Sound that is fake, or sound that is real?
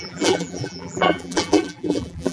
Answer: fake